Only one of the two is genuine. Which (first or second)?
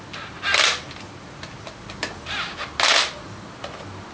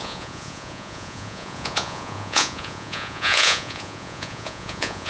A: first